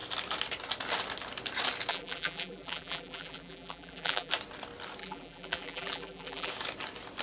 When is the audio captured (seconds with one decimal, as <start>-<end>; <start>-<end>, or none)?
0.0-1.9; 4.3-5.0; 6.5-7.2